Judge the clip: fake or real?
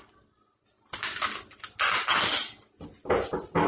real